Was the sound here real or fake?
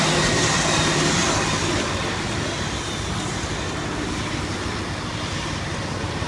real